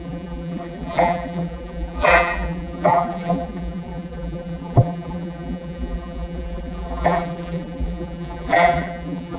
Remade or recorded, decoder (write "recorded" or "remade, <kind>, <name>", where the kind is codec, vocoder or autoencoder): remade, vocoder, BigVGAN v2